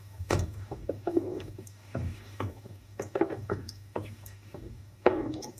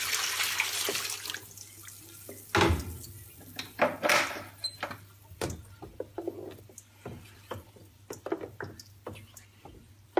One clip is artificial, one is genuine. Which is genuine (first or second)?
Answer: second